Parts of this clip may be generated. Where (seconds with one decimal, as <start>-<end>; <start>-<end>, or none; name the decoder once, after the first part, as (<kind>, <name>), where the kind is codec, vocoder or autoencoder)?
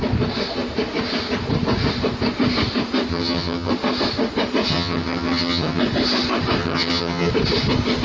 3.1-3.7 (vocoder, HiFi-GAN); 4.7-5.8; 6.6-7.3